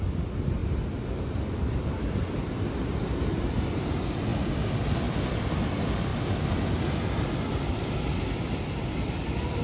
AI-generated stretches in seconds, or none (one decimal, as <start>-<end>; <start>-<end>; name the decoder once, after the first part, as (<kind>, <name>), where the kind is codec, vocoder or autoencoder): none